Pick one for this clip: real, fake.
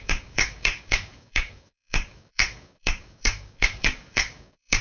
fake